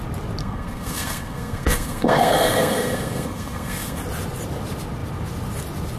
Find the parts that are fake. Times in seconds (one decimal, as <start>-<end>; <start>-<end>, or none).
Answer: 0.4-4.0